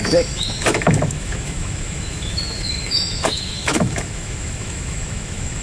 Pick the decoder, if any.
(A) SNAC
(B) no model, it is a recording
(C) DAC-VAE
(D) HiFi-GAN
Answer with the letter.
C